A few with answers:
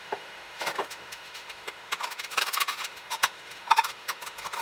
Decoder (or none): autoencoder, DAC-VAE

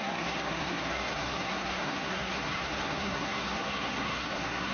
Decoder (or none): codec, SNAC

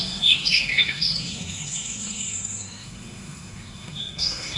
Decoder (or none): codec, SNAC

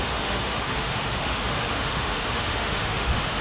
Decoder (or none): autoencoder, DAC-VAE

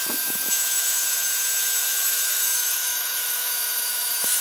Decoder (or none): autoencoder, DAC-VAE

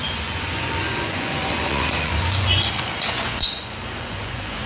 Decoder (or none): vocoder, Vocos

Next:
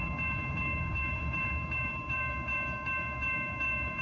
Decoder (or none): autoencoder, DAC-VAE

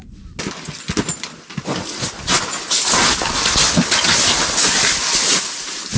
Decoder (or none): none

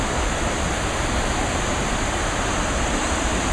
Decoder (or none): none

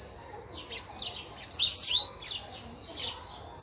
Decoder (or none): none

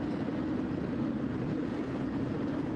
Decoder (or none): none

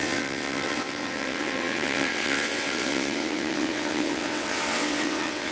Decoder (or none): vocoder, WaveNeXt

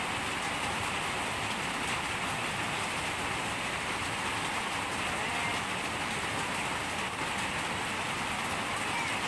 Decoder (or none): none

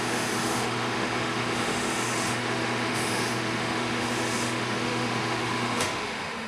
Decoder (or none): autoencoder, DAC-VAE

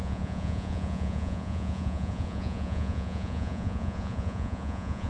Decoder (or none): vocoder, Vocos